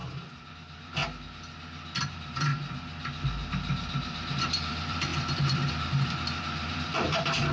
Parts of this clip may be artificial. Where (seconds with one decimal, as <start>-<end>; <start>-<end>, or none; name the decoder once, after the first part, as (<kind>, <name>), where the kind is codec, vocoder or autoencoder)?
0.5-1.0 (vocoder, BigVGAN v2); 2.0-2.5; 4.3-7.5